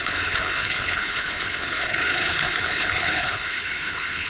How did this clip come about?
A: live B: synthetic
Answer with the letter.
B